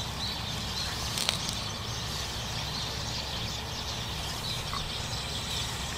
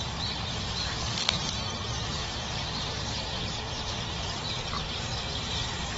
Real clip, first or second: first